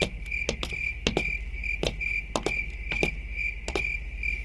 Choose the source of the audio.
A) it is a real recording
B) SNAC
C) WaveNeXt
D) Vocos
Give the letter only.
A